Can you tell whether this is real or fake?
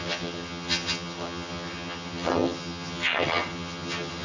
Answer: fake